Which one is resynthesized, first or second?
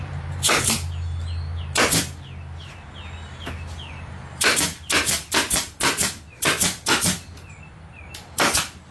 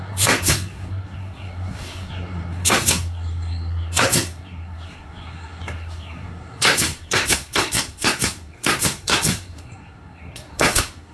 second